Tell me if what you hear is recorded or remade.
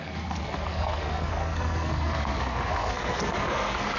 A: remade